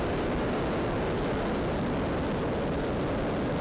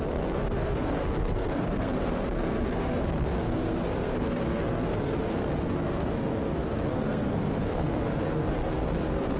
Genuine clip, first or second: first